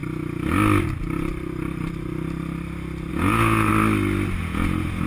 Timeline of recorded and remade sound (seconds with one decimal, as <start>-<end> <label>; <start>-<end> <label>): 0.0-3.1 recorded; 3.1-3.7 remade; 3.7-4.4 recorded; 4.4-5.1 remade